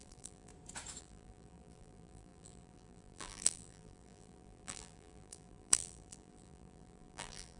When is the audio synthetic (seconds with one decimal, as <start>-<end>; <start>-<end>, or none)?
0.0-0.5; 1.0-7.6